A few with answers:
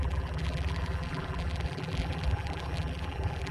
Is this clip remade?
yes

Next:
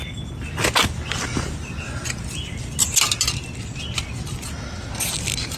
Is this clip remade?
no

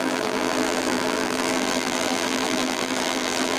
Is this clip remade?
yes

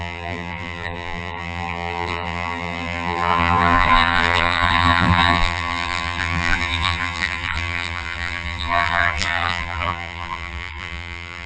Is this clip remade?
yes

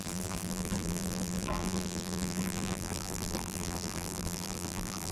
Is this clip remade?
yes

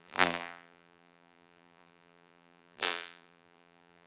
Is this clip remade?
yes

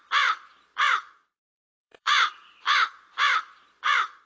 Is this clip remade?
yes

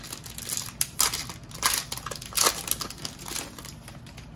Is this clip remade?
no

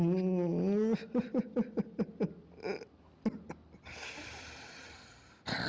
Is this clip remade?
no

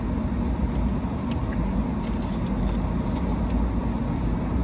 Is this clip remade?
no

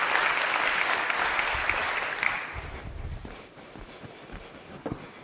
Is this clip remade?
no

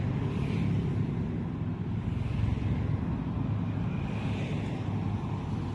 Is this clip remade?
no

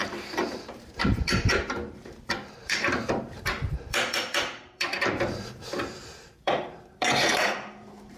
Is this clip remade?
yes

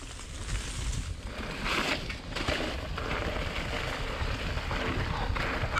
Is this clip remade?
no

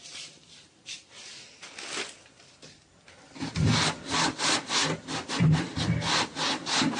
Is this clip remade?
no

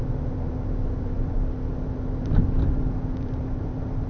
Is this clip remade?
yes